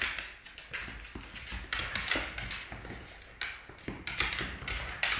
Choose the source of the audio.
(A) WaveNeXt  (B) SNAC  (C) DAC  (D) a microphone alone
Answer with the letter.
D